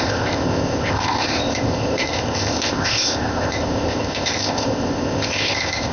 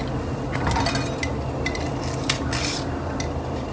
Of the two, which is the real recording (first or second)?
second